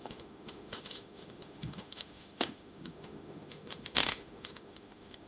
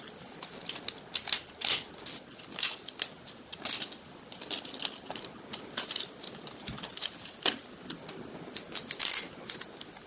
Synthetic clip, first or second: first